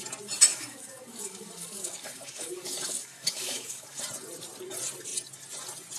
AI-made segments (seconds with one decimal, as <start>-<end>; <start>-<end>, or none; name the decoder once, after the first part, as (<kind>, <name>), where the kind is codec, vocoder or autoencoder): 0.5-4.0 (codec, DAC)